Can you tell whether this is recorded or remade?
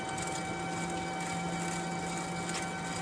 recorded